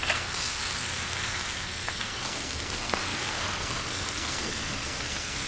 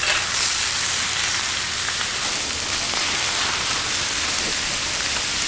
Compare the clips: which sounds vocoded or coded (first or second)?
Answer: first